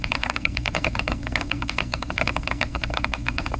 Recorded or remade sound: remade